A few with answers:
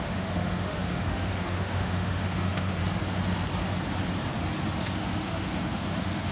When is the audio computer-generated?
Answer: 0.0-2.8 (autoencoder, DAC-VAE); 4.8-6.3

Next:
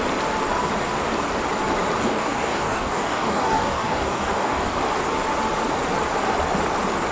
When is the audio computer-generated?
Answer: 2.0-4.8 (codec, DAC)

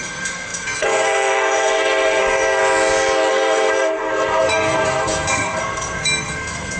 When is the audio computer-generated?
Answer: 0.0-2.6 (codec, SNAC); 3.3-6.8

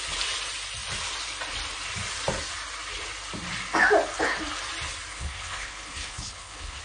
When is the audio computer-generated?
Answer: 5.1-6.8 (codec, HILCodec)

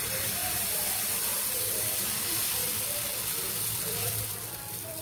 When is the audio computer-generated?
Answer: 0.0-0.4 (vocoder, BigVGAN v2); 0.9-1.3; 1.8-2.6; 3.5-5.0

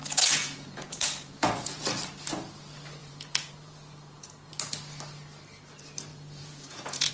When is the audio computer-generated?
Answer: 0.4-1.8 (vocoder, Vocos); 3.0-4.5; 6.1-7.1

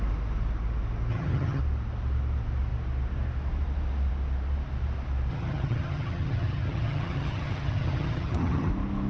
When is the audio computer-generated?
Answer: 1.1-1.6 (vocoder, HiFi-GAN); 5.3-8.7

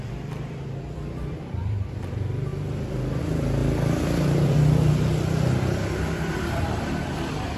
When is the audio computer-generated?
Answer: 0.0-7.6 (vocoder, BigVGAN v2)